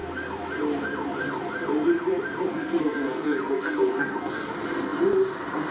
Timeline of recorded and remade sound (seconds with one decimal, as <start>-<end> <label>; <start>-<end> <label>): 0.0-2.5 recorded; 2.5-4.5 remade; 4.5-5.7 recorded